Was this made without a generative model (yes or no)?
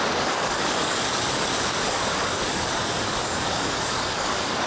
no